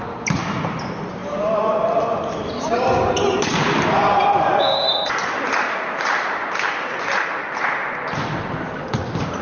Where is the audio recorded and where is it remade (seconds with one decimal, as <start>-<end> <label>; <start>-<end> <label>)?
0.0-9.4 recorded